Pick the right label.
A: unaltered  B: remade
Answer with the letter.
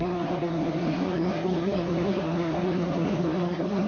B